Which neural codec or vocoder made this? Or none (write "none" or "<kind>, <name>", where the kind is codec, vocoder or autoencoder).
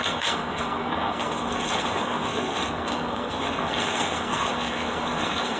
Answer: codec, SNAC